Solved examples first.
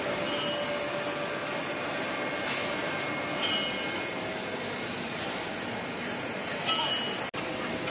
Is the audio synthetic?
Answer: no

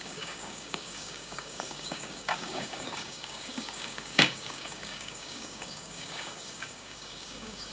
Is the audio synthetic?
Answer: yes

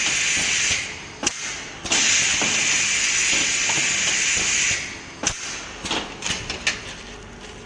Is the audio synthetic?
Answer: no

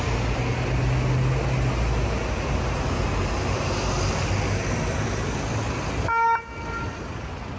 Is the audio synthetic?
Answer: no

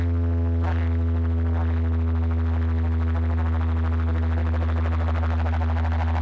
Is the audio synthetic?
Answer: no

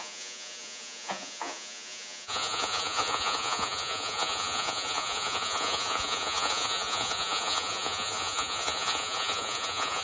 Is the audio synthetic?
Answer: yes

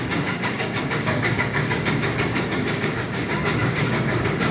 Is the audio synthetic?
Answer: yes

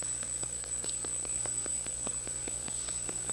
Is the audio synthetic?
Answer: yes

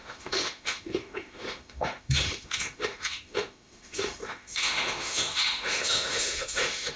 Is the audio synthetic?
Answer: yes